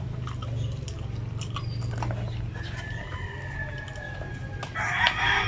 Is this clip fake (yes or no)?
no